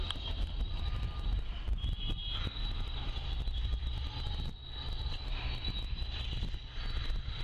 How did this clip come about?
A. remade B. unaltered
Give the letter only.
A